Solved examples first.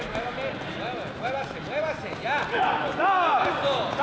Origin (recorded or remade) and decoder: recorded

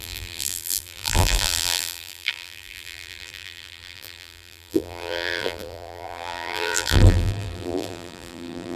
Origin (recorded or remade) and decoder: remade, vocoder, BigVGAN v2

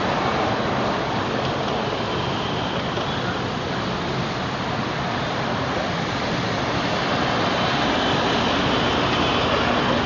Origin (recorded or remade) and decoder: recorded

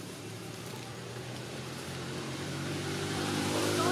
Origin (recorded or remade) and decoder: remade, vocoder, BigVGAN v2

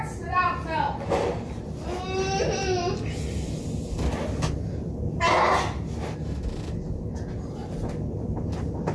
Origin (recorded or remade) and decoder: recorded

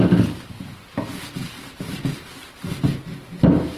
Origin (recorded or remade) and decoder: recorded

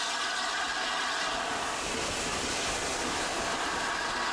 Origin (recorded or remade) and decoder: recorded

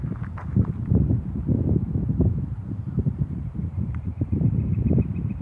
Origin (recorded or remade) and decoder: remade, vocoder, BigVGAN v2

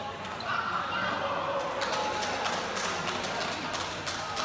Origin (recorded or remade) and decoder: recorded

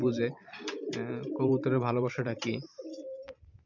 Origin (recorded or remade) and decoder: remade, vocoder, BigVGAN v2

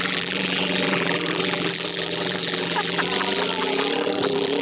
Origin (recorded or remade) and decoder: remade, vocoder, BigVGAN v2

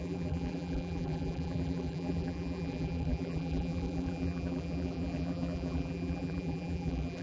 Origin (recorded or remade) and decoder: remade, vocoder, BigVGAN v2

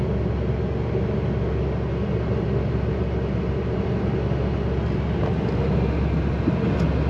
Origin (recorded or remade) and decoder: recorded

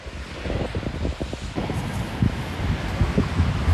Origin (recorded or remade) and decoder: recorded